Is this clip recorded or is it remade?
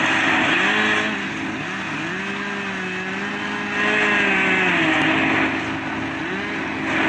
recorded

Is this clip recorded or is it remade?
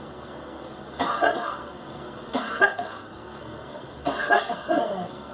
remade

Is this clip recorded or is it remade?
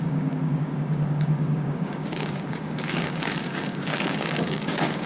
remade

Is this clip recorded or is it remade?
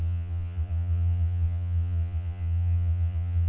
remade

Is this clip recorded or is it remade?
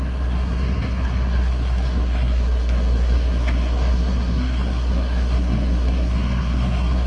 remade